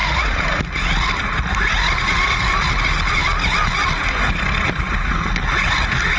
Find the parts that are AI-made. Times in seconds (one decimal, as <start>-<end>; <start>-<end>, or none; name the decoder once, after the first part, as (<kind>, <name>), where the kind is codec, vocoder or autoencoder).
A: 0.0-0.6 (vocoder, Vocos)